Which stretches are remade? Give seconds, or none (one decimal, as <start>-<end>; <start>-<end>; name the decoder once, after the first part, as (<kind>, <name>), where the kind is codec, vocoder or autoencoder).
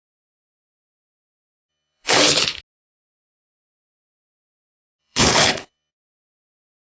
1.7-2.6 (codec, HILCodec); 5.0-5.9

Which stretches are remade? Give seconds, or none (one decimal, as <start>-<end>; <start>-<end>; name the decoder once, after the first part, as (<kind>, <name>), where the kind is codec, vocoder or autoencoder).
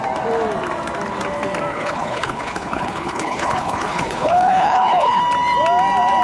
1.7-5.2 (codec, HILCodec)